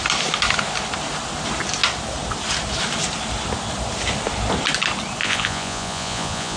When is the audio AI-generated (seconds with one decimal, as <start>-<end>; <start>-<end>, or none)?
5.2-6.6